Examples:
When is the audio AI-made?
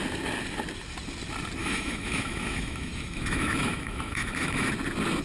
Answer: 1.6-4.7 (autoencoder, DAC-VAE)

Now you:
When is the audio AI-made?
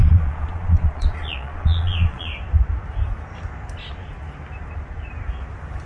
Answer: 0.0-2.3 (vocoder, Vocos)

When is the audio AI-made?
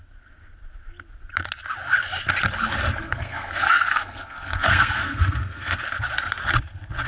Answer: 3.0-5.8 (codec, SNAC)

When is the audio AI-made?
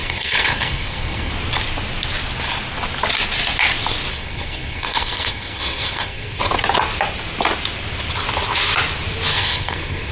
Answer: 0.0-1.3 (codec, SNAC); 4.1-6.4; 9.3-10.1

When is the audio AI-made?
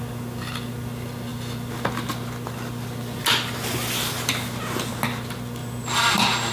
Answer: none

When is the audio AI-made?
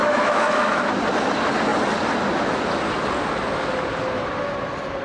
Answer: 0.0-0.9 (autoencoder, DAC-VAE)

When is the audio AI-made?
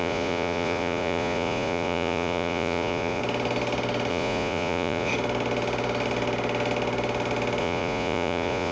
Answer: 0.0-3.2 (vocoder, Vocos); 4.1-5.1; 7.6-8.7